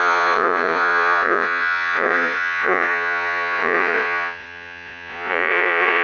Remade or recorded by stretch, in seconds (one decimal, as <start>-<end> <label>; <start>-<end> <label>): 0.0-6.0 remade